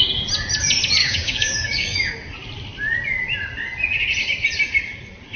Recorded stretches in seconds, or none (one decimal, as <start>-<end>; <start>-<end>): 0.0-1.0; 2.1-5.4